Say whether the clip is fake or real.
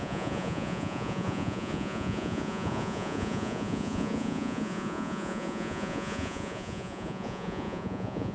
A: fake